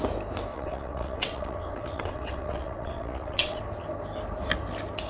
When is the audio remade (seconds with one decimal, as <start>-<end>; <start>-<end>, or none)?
0.5-3.6